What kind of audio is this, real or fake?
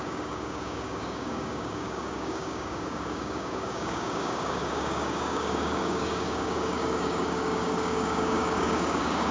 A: fake